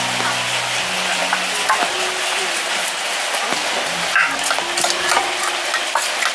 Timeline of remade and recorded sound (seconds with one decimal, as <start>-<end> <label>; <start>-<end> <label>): 0.0-6.3 recorded